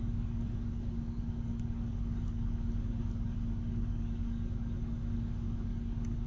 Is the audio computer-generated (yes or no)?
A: yes